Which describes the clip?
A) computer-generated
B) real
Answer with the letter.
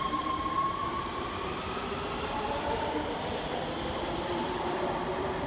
A